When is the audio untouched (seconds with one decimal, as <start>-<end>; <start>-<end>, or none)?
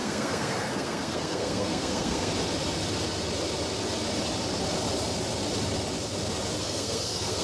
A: 2.3-6.6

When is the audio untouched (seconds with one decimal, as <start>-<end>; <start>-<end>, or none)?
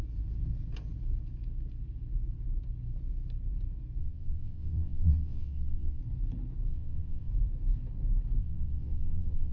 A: 0.0-4.0; 6.0-6.7; 7.3-8.4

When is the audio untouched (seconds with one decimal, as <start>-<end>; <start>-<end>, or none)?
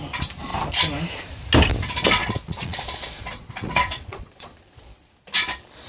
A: 0.0-2.2; 5.1-5.9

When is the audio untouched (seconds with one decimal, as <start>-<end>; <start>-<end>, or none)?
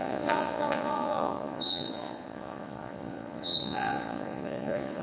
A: none